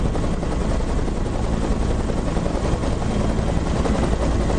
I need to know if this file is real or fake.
real